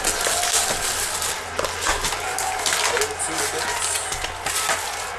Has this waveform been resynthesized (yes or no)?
no